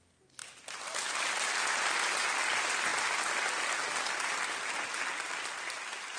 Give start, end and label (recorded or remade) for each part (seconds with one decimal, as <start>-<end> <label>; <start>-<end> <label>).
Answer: 0.0-6.2 recorded